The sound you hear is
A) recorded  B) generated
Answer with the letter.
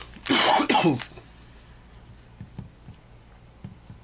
A